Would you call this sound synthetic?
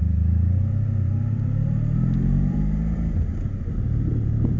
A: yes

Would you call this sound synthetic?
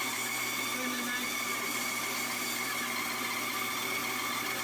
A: no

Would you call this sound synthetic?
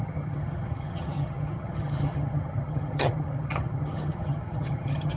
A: yes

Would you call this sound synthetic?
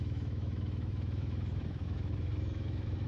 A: yes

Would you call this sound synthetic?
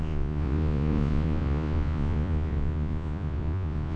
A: yes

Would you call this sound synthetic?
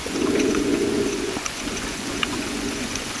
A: yes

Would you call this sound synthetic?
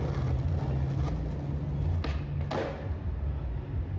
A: no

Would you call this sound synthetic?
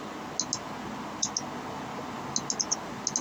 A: no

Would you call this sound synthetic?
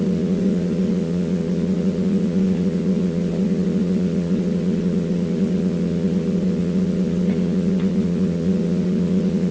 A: yes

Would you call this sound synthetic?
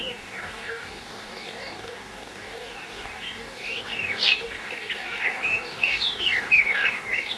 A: yes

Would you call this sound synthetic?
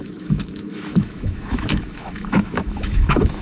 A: yes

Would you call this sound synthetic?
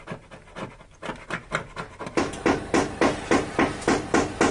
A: no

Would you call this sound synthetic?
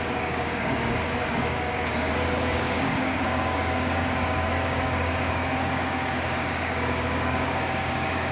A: yes